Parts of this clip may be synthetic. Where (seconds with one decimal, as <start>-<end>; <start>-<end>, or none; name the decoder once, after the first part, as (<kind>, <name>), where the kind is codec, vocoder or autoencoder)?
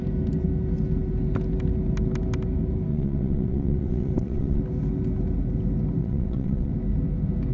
2.9-4.6 (vocoder, WaveNeXt); 6.0-6.7